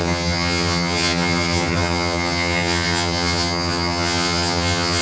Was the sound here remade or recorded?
remade